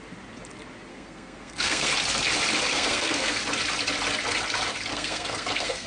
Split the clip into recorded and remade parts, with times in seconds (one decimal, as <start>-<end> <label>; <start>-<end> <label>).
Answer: 0.0-0.9 recorded; 0.9-1.9 remade; 1.9-2.7 recorded; 2.7-3.4 remade; 3.4-4.9 recorded; 4.9-5.9 remade